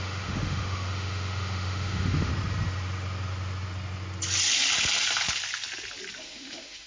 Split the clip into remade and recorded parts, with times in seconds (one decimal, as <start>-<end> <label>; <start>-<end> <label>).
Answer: 0.0-2.3 remade; 2.3-6.2 recorded; 6.2-6.9 remade